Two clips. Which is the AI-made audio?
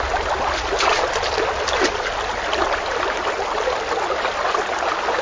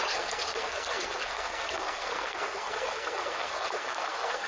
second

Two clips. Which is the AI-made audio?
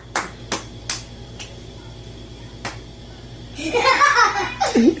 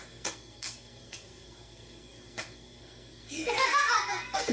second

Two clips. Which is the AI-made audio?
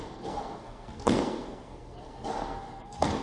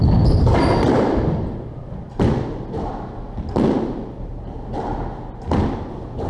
first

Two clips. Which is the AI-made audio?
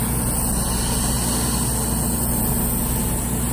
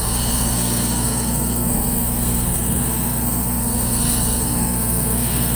second